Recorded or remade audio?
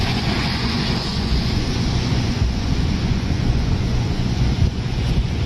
remade